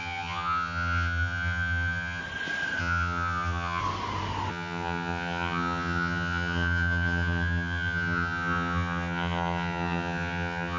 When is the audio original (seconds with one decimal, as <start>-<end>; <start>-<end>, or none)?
2.2-2.8; 3.8-4.5